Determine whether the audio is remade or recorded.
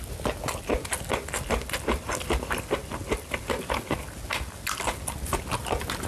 recorded